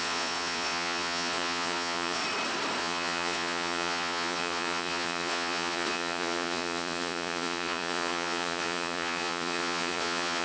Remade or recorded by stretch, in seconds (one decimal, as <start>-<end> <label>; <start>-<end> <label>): 0.0-2.2 remade; 2.2-2.8 recorded; 2.8-10.4 remade